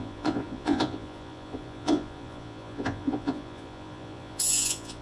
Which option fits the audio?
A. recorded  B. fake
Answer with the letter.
B